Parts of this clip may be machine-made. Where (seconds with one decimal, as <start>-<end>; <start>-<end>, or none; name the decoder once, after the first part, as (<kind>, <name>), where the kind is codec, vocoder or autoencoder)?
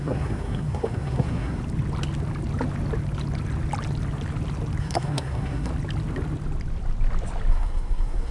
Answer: 0.0-1.6 (codec, SNAC); 4.8-5.7; 7.5-8.3